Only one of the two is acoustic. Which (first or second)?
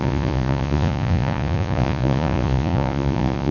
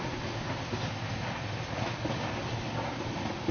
second